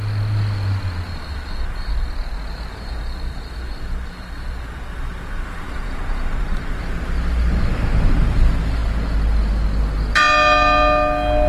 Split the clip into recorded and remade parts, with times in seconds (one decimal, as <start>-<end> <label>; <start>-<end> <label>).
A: 0.0-1.1 recorded; 1.1-2.1 remade; 2.1-2.7 recorded; 2.7-6.8 remade; 6.8-11.5 recorded